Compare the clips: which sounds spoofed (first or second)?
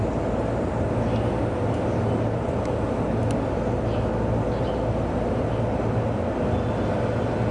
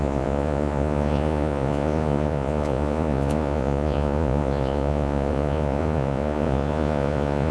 second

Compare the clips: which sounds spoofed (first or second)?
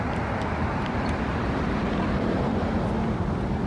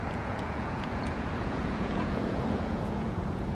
second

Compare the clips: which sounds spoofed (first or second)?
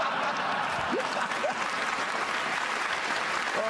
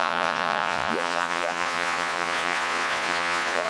second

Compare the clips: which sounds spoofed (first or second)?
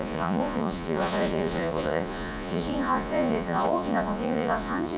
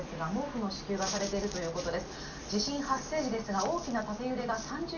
first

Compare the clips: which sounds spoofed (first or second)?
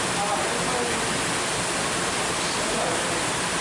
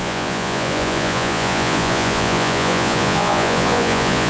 second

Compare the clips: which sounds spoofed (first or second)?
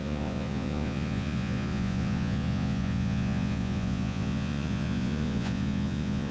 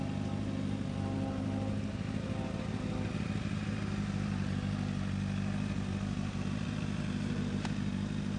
first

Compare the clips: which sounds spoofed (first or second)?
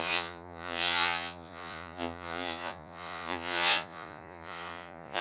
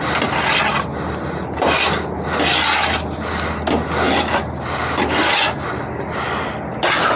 first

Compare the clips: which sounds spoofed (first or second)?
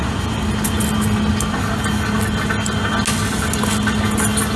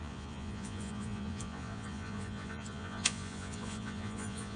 second